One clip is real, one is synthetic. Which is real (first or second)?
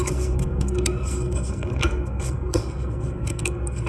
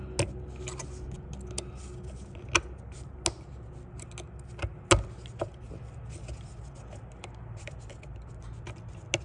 second